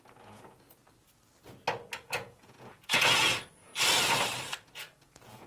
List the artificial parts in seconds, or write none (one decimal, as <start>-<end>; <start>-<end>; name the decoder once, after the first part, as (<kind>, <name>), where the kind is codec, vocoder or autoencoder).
0.0-0.8 (vocoder, Vocos); 2.0-3.7; 4.5-5.5